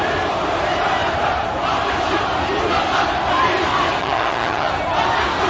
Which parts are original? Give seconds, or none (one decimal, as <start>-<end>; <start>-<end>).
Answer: 0.0-4.0; 4.7-5.5